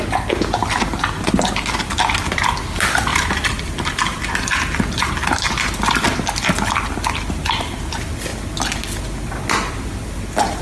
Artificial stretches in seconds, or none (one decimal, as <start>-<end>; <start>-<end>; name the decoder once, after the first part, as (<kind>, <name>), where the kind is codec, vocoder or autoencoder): 3.1-4.3 (vocoder, BigVGAN v2)